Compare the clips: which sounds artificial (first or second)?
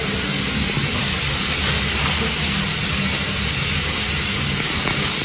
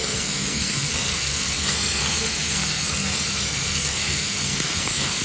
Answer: second